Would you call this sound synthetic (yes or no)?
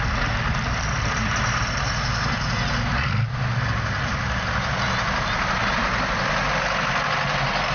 no